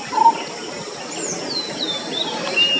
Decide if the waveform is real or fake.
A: real